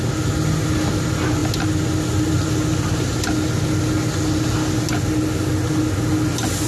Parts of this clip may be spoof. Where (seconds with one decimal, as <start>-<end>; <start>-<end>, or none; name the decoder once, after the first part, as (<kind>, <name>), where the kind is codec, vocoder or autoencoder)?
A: none